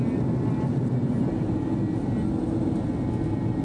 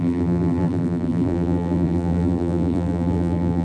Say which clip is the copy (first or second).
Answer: second